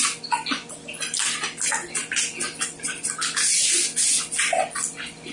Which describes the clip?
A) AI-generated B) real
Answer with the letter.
B